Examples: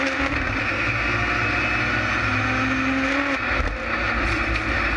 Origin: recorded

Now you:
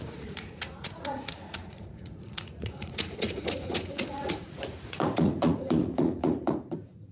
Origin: remade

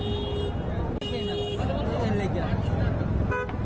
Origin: recorded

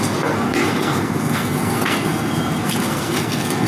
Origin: remade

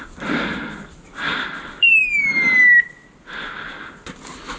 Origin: recorded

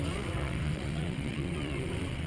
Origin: remade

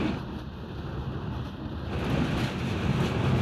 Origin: recorded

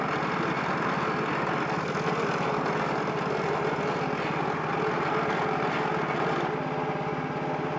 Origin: recorded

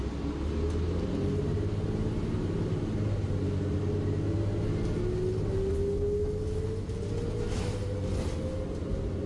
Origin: recorded